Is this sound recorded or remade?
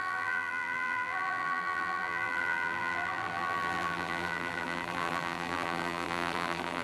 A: remade